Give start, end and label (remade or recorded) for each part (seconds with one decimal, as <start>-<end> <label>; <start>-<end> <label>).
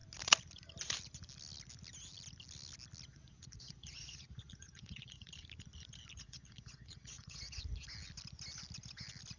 0.0-3.1 recorded; 3.1-5.3 remade; 5.3-6.1 recorded; 6.1-7.6 remade; 7.6-9.4 recorded